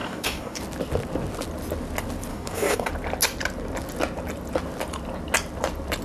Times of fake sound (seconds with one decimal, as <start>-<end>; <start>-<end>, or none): 0.0-0.6; 2.3-2.9